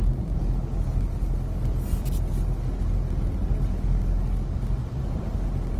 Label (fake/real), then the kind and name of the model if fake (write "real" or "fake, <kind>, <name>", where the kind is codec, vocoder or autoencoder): real